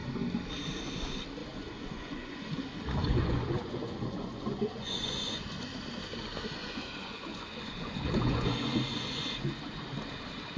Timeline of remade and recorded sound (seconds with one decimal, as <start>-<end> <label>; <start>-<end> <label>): 0.0-1.4 recorded; 1.4-2.5 remade; 2.5-3.0 recorded; 3.0-5.7 remade; 5.7-6.6 recorded; 6.6-9.8 remade; 9.8-10.6 recorded